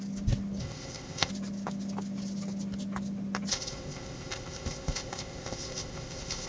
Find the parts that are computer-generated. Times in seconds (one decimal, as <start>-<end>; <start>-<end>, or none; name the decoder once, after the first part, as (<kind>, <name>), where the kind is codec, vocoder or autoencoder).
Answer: 0.6-1.3 (codec, ZipCodec); 3.5-6.5